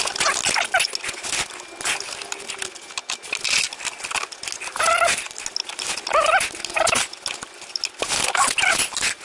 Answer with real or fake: real